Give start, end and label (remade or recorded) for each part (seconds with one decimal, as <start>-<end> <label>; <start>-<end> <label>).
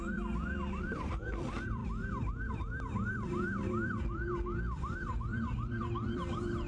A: 0.0-6.7 remade